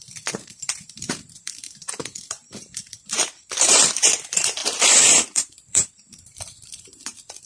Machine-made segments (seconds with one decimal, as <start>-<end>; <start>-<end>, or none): 0.0-7.5